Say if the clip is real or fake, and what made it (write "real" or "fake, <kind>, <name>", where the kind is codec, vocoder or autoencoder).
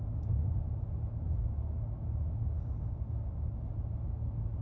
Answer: real